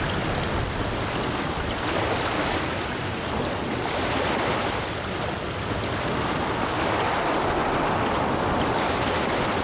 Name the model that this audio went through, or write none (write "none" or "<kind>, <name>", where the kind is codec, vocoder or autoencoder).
none